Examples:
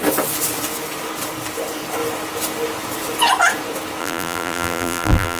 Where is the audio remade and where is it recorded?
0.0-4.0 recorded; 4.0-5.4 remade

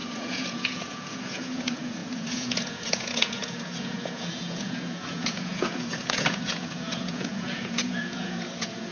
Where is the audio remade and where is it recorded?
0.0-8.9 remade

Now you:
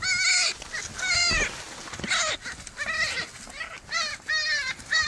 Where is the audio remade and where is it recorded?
0.0-5.1 recorded